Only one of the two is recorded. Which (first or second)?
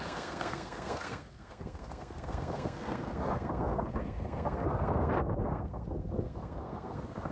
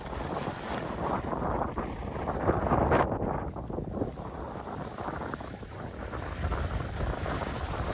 second